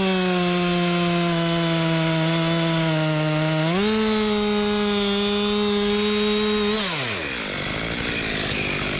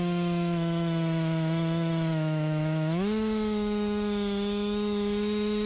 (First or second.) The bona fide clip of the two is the first